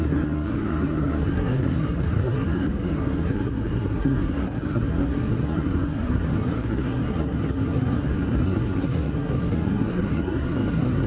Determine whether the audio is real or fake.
fake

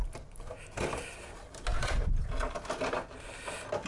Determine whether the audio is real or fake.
real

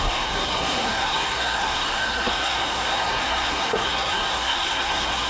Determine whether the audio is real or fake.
fake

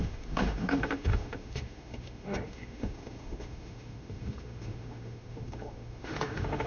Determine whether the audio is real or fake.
fake